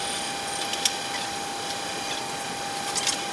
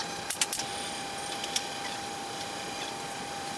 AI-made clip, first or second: second